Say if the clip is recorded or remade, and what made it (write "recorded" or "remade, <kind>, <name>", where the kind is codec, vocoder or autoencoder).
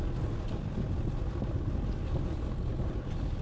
recorded